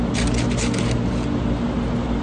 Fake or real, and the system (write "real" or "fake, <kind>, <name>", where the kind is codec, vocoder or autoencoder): real